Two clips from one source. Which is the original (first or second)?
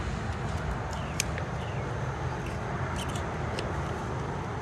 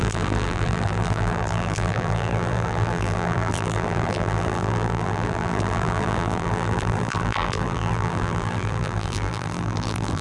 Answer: first